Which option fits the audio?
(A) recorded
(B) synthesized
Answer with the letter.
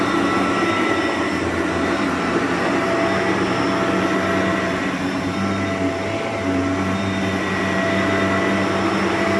A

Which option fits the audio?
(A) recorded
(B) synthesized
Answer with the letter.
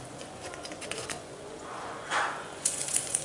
B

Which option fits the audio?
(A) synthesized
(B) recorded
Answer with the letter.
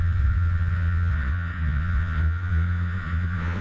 A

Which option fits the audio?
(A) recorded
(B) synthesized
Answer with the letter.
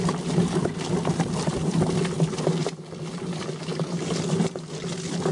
A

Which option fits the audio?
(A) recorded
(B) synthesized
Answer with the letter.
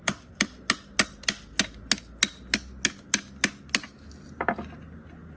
A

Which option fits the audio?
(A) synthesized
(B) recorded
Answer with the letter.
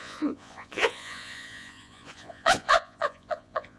A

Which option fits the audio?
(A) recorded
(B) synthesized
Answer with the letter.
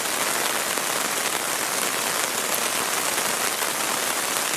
A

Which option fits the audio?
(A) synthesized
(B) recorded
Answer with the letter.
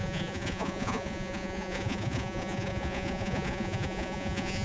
A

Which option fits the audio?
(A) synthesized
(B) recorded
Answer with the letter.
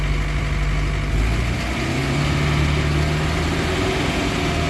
B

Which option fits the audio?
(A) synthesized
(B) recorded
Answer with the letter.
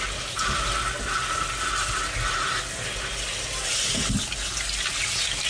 B